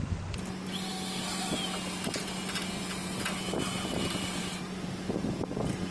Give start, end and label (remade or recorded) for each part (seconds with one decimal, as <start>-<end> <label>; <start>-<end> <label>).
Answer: 0.0-5.9 recorded